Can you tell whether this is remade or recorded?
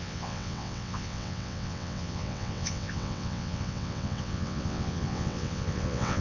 remade